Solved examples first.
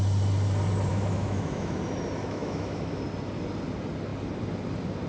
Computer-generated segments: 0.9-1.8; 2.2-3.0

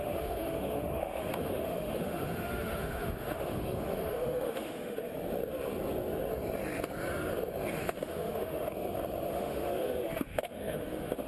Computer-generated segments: 0.0-5.1; 7.7-8.6; 9.3-11.3

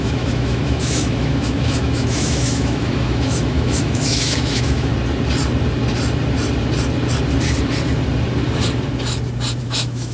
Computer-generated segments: 0.0-4.9; 9.6-10.1

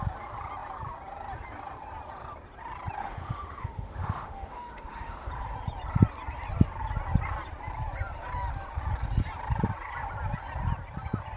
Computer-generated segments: 3.0-5.3

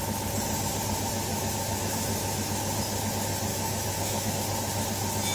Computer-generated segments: 1.3-3.1; 3.5-4.3